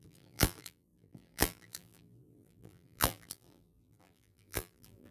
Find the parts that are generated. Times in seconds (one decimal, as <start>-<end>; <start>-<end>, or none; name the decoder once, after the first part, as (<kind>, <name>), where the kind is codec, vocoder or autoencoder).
0.0-5.1 (vocoder, BigVGAN v2)